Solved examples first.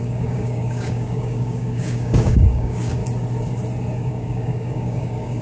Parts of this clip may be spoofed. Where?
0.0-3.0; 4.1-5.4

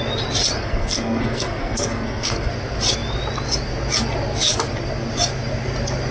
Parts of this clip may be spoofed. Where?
0.6-2.5

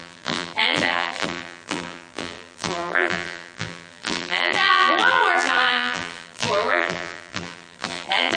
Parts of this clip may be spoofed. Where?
0.0-8.4